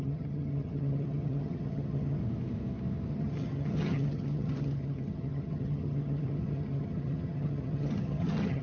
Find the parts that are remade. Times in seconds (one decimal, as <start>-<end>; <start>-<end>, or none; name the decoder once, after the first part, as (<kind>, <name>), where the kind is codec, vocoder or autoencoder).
0.0-2.2 (vocoder, HiFi-GAN); 3.1-8.6